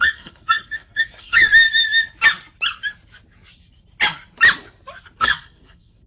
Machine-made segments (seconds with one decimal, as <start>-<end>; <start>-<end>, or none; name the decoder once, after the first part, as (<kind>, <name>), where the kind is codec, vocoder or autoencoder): 0.0-1.5 (codec, SNAC); 5.2-6.1